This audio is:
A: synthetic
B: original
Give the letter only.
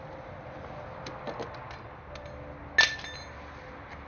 B